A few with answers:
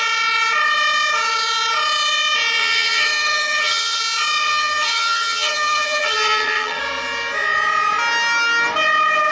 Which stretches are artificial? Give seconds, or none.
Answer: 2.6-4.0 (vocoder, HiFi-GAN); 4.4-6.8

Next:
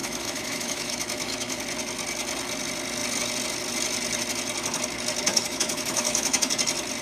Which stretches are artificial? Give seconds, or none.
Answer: 0.0-1.6 (autoencoder, DAC-VAE); 5.3-6.5

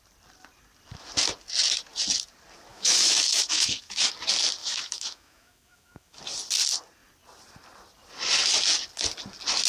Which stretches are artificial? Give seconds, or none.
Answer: 2.7-4.1 (autoencoder, DAC-VAE); 4.6-6.2

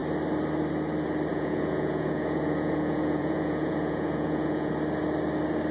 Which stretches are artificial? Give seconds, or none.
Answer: 1.3-4.7 (vocoder, Vocos)

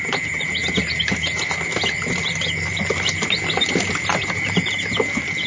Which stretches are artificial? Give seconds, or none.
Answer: none